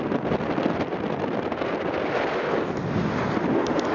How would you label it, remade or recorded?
recorded